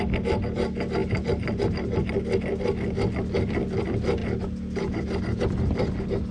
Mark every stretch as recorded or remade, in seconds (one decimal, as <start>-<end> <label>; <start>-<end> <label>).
0.0-6.3 recorded